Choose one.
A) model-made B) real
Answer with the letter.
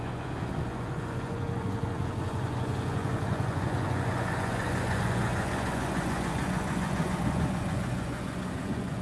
A